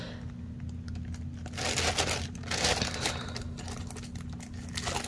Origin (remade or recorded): recorded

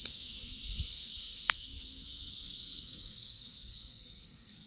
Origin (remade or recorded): remade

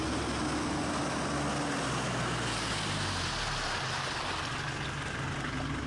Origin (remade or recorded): recorded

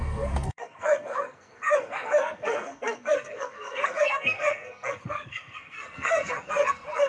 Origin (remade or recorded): remade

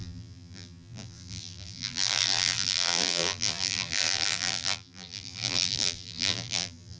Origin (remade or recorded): remade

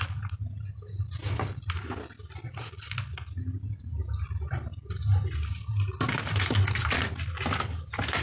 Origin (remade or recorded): recorded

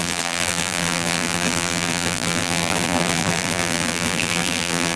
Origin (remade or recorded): remade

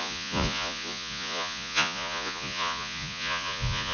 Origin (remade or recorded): remade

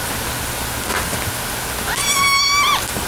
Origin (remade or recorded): recorded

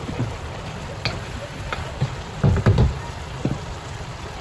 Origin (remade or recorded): remade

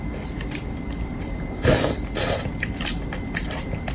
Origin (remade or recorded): recorded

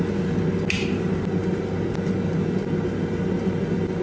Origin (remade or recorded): recorded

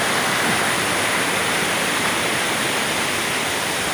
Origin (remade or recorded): recorded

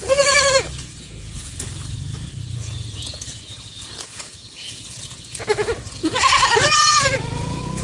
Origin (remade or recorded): remade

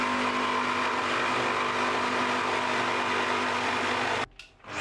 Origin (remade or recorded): recorded